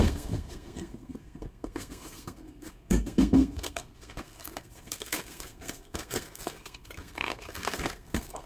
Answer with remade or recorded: remade